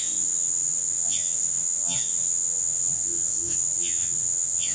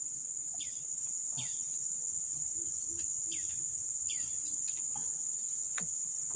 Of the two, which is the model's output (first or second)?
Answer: first